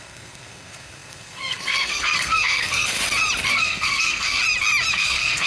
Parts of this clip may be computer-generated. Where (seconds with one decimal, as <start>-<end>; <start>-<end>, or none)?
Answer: 0.0-3.0; 3.5-4.4; 4.9-5.5